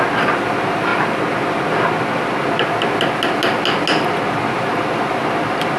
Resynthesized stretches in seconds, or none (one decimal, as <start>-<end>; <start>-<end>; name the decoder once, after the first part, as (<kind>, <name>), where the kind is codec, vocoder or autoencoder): none